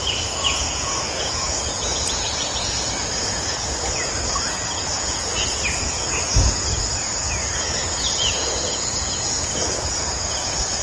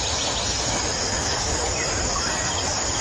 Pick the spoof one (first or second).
first